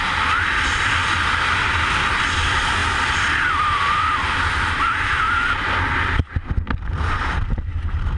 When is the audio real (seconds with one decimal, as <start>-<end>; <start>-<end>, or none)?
0.0-8.2